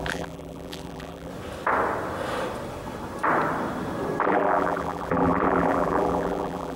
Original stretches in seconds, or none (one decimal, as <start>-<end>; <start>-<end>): 1.3-4.2

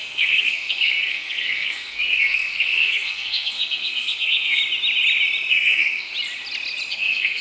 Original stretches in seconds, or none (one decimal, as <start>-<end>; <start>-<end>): 4.6-5.5; 6.1-6.9

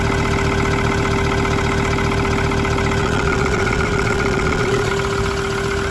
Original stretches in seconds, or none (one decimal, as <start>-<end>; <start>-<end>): 0.0-3.0; 4.9-5.9